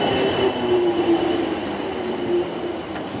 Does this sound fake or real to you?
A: fake